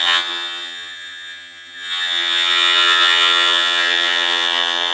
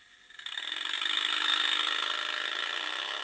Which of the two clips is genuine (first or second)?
second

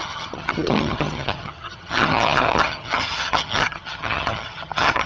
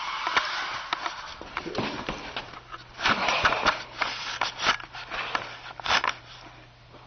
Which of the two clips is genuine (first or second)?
second